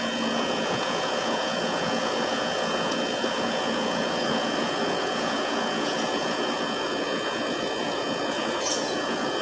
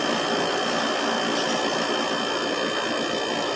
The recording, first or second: second